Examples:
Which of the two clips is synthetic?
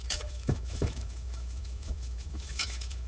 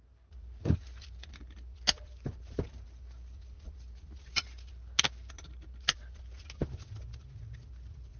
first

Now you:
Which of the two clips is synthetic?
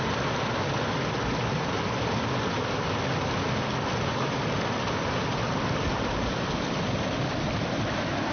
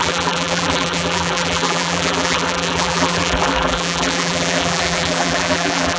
second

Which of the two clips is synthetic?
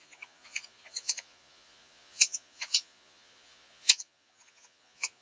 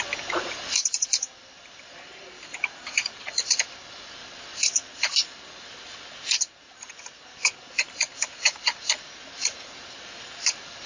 first